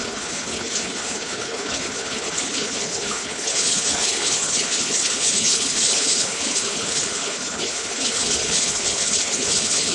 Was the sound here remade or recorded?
remade